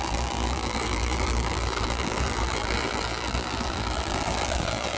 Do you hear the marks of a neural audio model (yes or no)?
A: yes